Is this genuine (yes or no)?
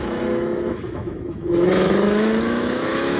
no